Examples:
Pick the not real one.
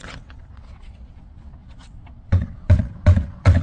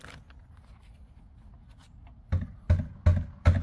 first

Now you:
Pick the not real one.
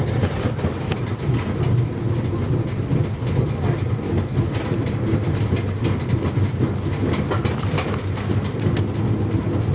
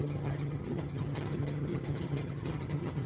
second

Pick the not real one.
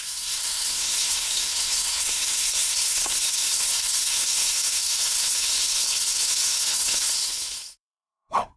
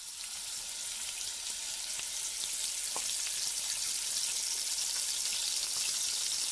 first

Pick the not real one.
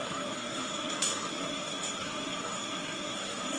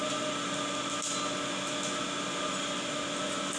first